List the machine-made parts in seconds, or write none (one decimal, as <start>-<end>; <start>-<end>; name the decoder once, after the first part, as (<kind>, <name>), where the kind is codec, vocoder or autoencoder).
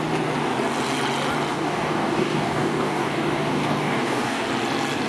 1.5-4.5 (codec, DAC)